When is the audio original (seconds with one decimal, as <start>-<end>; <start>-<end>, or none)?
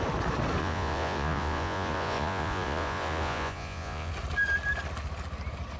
0.0-0.6; 4.1-5.8